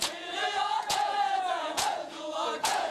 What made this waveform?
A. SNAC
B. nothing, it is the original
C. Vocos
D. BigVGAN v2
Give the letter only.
C